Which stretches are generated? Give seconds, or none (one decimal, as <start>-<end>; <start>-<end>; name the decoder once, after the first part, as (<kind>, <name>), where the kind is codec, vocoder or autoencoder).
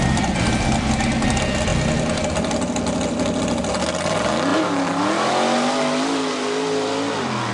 4.5-5.3 (vocoder, BigVGAN v2)